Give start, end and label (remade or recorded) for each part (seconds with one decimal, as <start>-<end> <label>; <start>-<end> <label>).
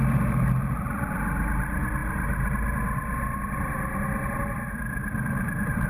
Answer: 0.0-5.9 recorded